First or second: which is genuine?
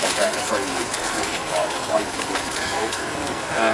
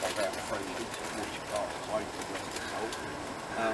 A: second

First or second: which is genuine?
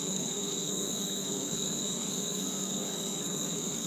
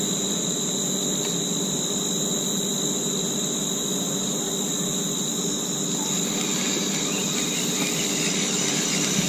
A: second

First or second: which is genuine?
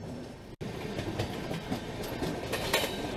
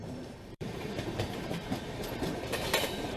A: first